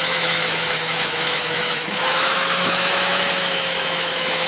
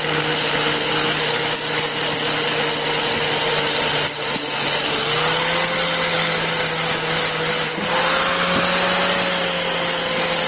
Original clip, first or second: second